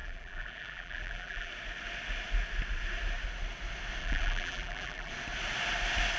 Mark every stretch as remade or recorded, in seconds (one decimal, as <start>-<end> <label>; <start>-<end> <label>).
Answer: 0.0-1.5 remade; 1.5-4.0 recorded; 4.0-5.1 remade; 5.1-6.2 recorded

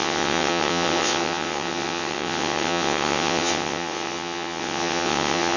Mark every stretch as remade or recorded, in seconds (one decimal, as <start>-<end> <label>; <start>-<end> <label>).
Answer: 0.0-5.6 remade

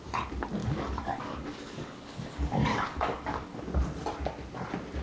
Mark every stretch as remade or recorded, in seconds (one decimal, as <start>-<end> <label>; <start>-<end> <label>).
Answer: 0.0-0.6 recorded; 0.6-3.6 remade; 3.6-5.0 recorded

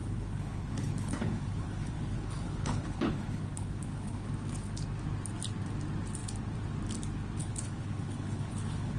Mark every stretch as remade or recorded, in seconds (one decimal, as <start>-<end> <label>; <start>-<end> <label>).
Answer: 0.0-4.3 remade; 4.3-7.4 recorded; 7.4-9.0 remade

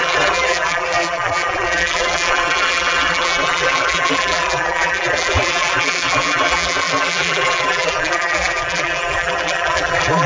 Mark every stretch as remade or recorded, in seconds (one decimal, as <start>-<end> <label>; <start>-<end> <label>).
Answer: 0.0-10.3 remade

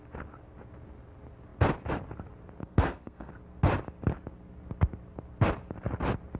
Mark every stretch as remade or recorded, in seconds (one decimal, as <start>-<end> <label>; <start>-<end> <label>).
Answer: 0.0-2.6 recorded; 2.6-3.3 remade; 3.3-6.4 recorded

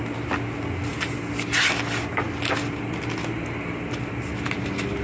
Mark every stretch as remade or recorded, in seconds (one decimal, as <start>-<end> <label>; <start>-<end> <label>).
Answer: 0.0-5.0 recorded

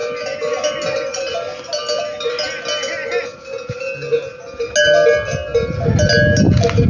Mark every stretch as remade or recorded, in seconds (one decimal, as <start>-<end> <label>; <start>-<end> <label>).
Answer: 0.0-6.9 recorded